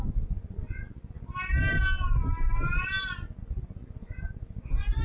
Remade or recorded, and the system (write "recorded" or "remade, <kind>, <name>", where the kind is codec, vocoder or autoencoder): recorded